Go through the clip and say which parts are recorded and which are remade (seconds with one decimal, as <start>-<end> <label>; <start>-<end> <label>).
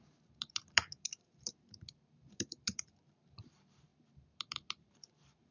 0.0-5.5 remade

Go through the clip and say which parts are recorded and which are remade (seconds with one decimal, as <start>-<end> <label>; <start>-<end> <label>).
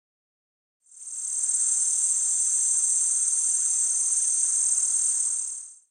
0.0-1.6 recorded; 1.6-4.5 remade; 4.5-5.9 recorded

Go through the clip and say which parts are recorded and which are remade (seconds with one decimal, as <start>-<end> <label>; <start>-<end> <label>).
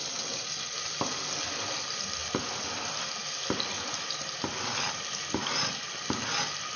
0.0-6.8 recorded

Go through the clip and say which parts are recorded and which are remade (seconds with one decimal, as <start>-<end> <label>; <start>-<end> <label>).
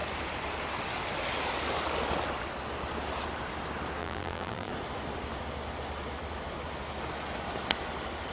0.0-4.0 recorded; 4.0-4.7 remade; 4.7-8.3 recorded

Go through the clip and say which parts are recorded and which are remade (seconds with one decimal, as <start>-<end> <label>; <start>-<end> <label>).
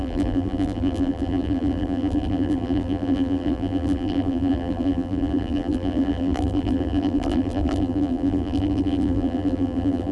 0.0-10.1 remade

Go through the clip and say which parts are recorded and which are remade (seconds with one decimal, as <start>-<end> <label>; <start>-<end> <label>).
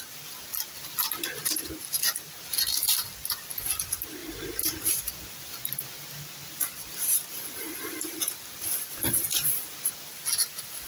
0.0-0.5 recorded; 0.5-1.7 remade; 1.7-2.5 recorded; 2.5-3.5 remade; 3.5-4.2 recorded; 4.2-8.9 remade; 8.9-9.3 recorded; 9.3-10.1 remade; 10.1-10.9 recorded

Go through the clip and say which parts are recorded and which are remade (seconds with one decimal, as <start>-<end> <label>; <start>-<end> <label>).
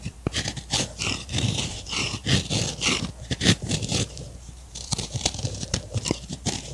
0.0-2.2 remade; 2.2-3.2 recorded; 3.2-6.7 remade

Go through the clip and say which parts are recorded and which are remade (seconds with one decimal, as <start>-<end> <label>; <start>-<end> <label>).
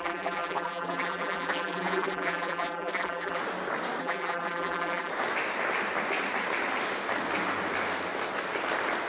0.0-3.4 remade; 3.4-4.0 recorded; 4.0-5.1 remade; 5.1-9.1 recorded